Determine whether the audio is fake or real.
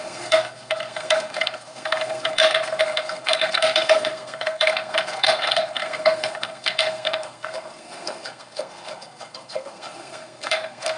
fake